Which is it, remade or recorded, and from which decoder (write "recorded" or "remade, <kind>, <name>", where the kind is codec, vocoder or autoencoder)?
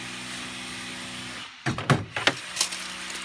recorded